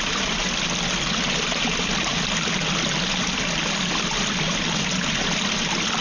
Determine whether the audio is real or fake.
real